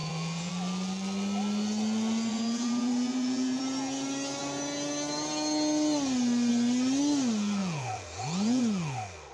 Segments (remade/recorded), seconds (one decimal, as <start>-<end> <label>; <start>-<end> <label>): 0.0-0.5 remade; 0.5-2.3 recorded; 2.3-3.6 remade; 3.6-7.6 recorded; 7.6-8.6 remade; 8.6-9.3 recorded

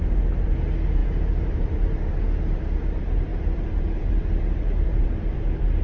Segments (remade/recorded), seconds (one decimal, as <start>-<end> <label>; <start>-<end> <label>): 0.0-1.0 recorded; 1.0-2.2 remade; 2.2-3.3 recorded; 3.3-5.8 remade

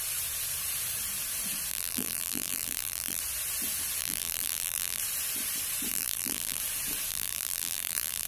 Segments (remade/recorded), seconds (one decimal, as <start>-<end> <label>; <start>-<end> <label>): 0.0-1.7 recorded; 1.7-3.2 remade; 3.2-4.0 recorded; 4.0-5.0 remade; 5.0-5.9 recorded; 5.9-6.6 remade; 6.6-7.1 recorded; 7.1-8.3 remade